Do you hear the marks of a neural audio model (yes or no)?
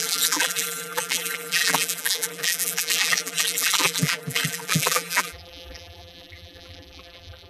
yes